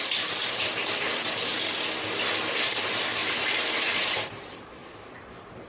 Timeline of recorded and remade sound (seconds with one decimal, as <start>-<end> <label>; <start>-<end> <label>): 0.0-1.5 remade; 1.5-2.5 recorded; 2.5-3.2 remade; 3.2-3.8 recorded; 3.8-4.8 remade; 4.8-5.7 recorded